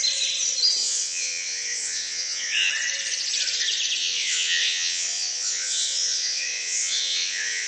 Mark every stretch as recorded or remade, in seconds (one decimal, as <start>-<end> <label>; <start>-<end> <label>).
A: 0.0-0.8 recorded; 0.8-2.7 remade; 2.7-4.0 recorded; 4.0-7.7 remade